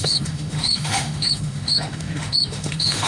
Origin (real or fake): fake